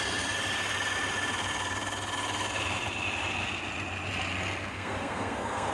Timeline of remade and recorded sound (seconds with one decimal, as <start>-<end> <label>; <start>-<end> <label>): 0.0-4.7 recorded; 4.7-5.7 remade